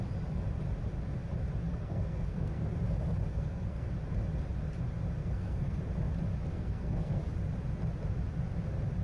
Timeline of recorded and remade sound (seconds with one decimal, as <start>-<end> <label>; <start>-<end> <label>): 0.0-1.7 recorded; 1.7-2.6 remade; 2.6-3.3 recorded; 3.3-3.9 remade; 3.9-5.2 recorded; 5.2-5.8 remade; 5.8-6.5 recorded; 6.5-7.2 remade; 7.2-9.0 recorded